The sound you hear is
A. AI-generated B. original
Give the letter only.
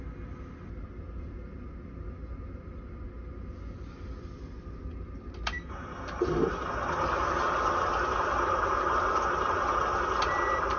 B